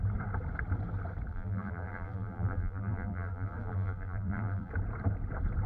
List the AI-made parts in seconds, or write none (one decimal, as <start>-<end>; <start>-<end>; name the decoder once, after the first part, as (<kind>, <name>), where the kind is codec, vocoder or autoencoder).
1.3-4.7 (vocoder, BigVGAN v2)